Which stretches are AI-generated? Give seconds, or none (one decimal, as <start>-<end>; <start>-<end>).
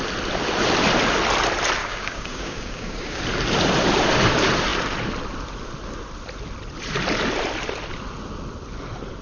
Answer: 1.8-3.2